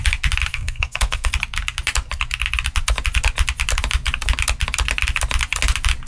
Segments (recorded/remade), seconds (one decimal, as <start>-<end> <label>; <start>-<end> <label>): 0.0-0.5 recorded; 0.5-1.3 remade; 1.3-6.1 recorded